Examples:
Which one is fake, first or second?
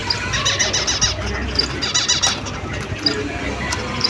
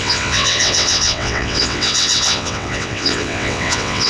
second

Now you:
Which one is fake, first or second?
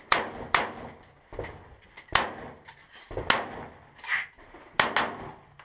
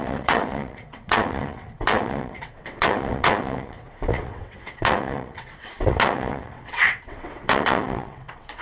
second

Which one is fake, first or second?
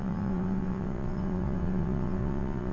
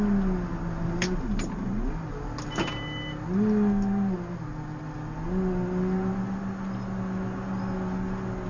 first